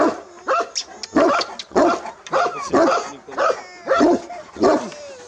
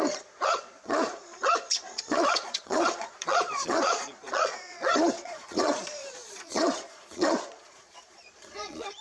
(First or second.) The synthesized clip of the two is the second